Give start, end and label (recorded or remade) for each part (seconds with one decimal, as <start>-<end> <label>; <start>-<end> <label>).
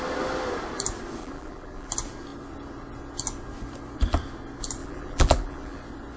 0.0-1.2 recorded; 1.2-1.9 remade; 1.9-4.8 recorded; 4.8-5.8 remade; 5.8-6.2 recorded